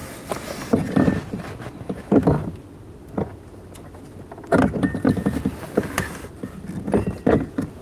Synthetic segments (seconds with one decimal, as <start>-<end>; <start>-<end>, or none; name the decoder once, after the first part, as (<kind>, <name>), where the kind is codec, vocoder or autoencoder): none